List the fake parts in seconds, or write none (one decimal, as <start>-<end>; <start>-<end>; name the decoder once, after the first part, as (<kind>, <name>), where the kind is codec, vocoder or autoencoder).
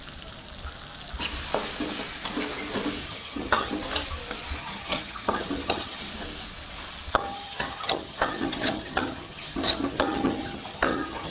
3.0-3.7 (vocoder, HiFi-GAN); 4.6-6.0; 7.1-11.3